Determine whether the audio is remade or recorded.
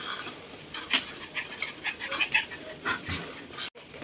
recorded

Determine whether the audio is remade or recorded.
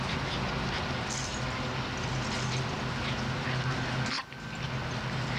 recorded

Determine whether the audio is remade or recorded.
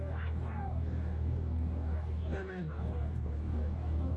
remade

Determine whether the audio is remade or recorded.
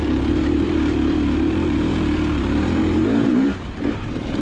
remade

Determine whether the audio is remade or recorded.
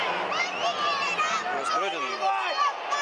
recorded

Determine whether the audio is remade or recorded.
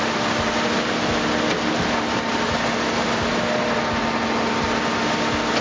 recorded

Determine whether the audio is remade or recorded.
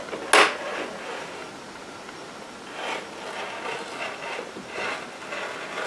recorded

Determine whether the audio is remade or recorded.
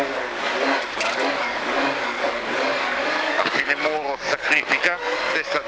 remade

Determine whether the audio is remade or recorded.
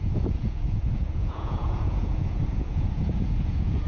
remade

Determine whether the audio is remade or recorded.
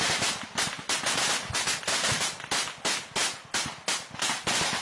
recorded